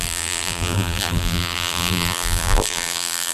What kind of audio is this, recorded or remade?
remade